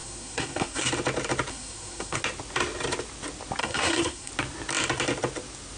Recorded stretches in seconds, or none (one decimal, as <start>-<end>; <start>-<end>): 0.9-1.5; 2.2-3.6; 4.3-5.8